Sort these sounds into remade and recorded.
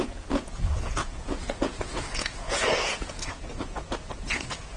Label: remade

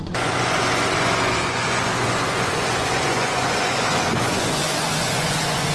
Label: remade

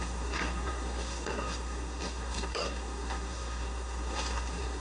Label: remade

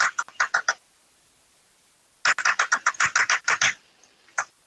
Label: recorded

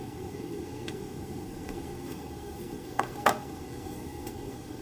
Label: remade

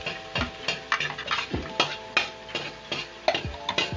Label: recorded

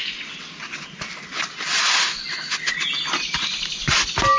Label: recorded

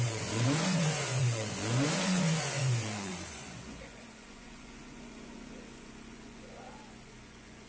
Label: remade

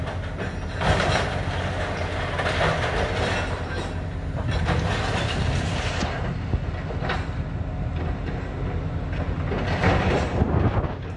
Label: recorded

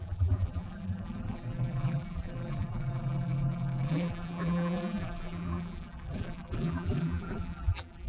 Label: remade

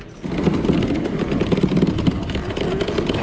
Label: recorded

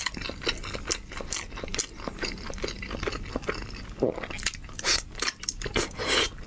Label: recorded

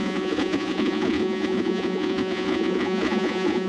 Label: remade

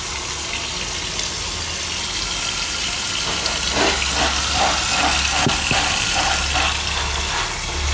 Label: recorded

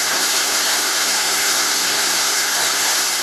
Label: remade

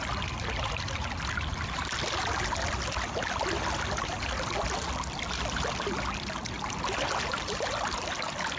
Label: recorded